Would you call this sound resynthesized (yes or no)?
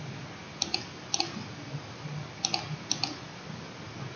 no